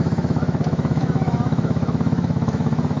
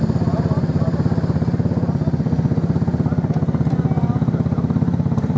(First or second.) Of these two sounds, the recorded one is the second